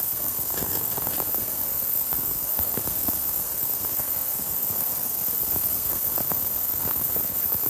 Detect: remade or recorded remade